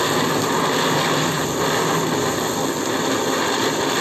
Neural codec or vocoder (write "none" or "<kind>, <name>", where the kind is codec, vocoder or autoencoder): none